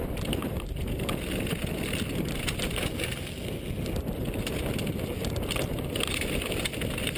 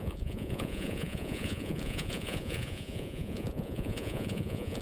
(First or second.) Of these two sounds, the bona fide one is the first